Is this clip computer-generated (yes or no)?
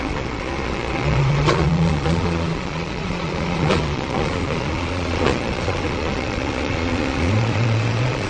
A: yes